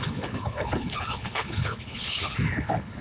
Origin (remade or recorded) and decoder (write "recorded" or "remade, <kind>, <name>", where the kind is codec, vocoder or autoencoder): remade, codec, HILCodec